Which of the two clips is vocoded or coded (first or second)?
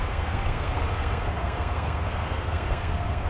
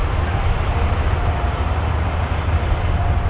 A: first